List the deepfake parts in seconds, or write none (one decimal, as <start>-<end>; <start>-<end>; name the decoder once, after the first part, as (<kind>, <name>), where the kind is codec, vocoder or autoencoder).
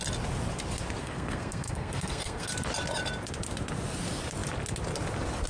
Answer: 1.0-2.5 (codec, SNAC)